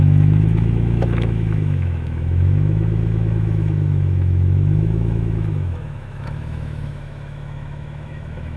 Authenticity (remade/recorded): remade